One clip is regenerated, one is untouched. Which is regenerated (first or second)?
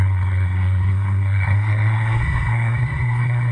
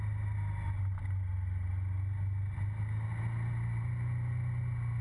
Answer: first